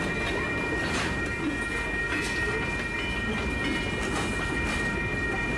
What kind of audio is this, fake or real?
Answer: real